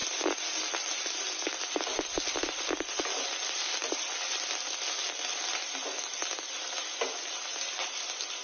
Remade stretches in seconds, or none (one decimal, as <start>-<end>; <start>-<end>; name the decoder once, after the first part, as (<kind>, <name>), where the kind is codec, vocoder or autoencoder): none